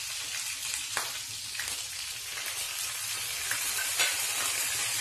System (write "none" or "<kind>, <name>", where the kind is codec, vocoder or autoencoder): none